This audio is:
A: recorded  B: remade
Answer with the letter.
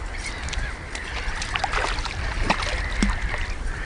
B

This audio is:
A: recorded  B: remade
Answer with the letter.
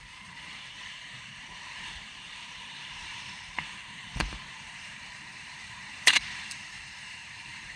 B